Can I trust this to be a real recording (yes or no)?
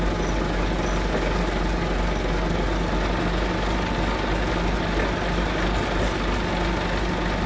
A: yes